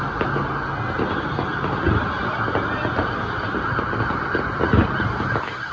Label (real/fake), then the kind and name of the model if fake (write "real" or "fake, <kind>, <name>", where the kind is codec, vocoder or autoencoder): real